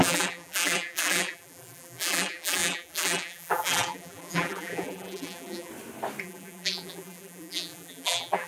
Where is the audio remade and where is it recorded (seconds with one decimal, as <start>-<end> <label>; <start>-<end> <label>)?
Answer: 0.0-5.7 remade; 5.7-6.2 recorded; 6.2-8.5 remade